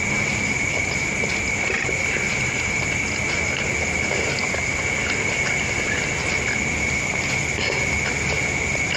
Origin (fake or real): real